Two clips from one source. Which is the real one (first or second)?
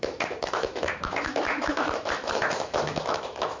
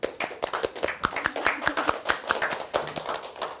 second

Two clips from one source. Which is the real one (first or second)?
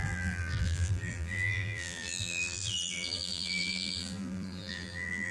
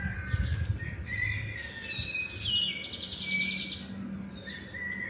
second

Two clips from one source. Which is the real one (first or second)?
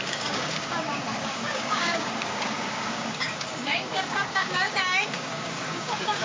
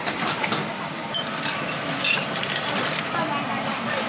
second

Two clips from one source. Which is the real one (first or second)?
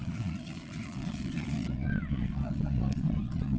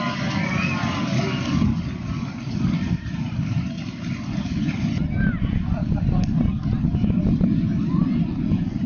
second